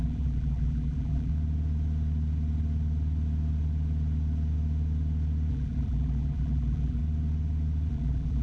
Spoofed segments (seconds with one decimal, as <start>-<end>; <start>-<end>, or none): 0.0-1.3; 5.5-7.0; 7.9-8.4